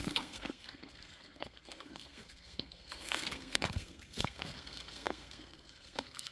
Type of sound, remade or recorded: remade